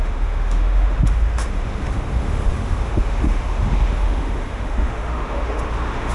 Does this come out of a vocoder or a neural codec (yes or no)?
yes